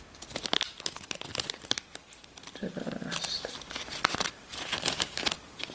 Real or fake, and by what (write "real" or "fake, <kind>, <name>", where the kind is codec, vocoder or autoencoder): real